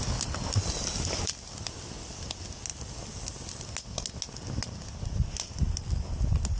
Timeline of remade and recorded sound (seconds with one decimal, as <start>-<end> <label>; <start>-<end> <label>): 0.0-6.6 recorded

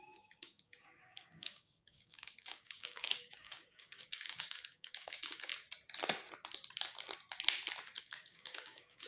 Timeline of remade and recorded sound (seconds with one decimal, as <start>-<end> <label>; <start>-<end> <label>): 0.0-5.5 remade; 5.5-8.0 recorded; 8.0-9.1 remade

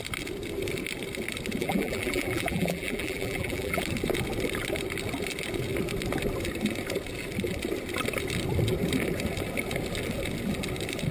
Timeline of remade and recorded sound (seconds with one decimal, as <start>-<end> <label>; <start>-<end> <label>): 0.0-1.6 recorded; 1.6-3.8 remade; 3.8-11.1 recorded

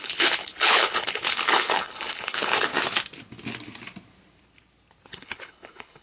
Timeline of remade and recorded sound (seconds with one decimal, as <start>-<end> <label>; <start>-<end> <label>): 0.0-2.7 remade; 2.7-5.1 recorded; 5.1-6.0 remade